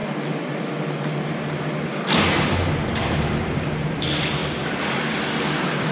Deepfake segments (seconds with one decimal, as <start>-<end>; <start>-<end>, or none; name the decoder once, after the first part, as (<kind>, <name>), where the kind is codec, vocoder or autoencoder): 2.9-5.9 (vocoder, BigVGAN v2)